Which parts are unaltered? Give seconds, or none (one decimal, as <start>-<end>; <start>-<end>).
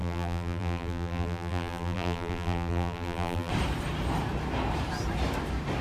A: 3.5-5.8